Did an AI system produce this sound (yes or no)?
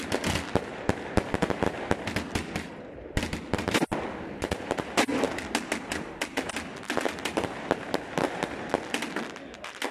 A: no